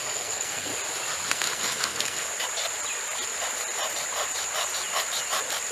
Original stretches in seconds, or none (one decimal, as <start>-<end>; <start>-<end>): 0.7-1.3; 2.3-5.7